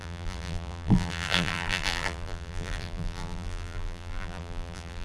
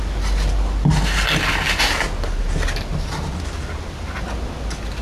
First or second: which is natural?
second